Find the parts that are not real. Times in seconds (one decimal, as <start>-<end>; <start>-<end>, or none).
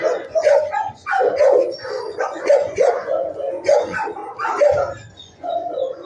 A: 0.0-4.2; 5.2-6.1